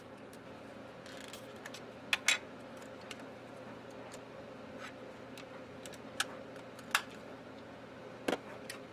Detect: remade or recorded recorded